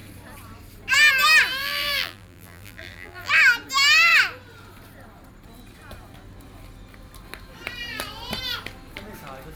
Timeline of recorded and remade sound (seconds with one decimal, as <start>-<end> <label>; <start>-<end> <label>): 0.0-1.6 recorded; 1.6-3.3 remade; 3.3-9.6 recorded